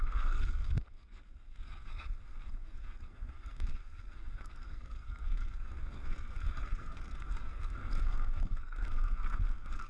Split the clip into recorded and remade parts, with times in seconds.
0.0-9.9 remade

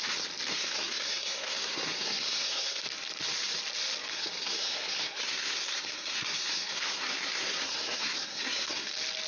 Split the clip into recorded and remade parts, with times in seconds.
0.0-0.5 recorded; 0.5-2.8 remade; 2.8-4.1 recorded; 4.1-8.9 remade; 8.9-9.3 recorded

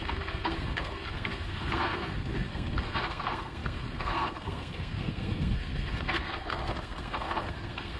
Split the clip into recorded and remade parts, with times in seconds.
0.0-8.0 remade

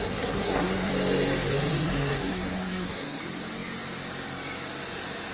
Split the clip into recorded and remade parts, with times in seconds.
0.0-0.9 remade; 0.9-1.5 recorded; 1.5-3.2 remade; 3.2-5.3 recorded

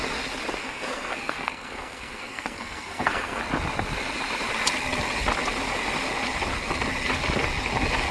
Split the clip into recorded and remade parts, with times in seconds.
0.0-0.6 recorded; 0.6-3.4 remade; 3.4-8.1 recorded

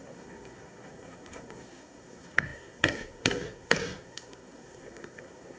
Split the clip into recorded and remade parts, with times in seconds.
0.0-5.6 remade

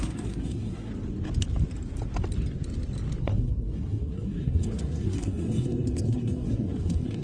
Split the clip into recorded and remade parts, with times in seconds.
0.0-0.9 remade; 0.9-3.2 recorded; 3.2-7.2 remade